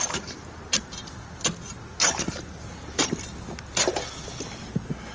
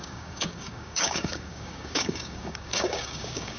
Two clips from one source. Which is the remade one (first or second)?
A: second